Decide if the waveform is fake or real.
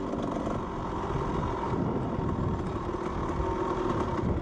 real